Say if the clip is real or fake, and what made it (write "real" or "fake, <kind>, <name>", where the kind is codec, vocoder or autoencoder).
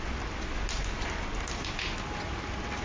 real